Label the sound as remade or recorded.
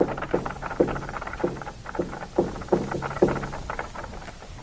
recorded